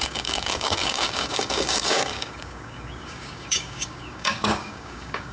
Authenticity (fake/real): fake